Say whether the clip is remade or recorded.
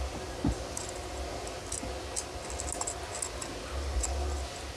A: recorded